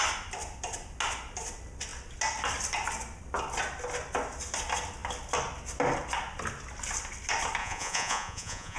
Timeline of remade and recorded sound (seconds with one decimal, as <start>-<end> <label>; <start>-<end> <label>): 0.0-7.6 recorded; 7.6-8.8 remade